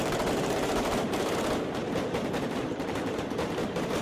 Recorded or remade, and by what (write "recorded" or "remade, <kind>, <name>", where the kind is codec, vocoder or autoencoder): remade, vocoder, BigVGAN v2